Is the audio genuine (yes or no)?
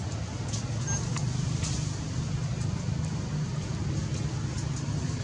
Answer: yes